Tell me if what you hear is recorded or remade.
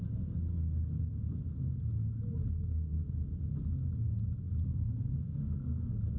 recorded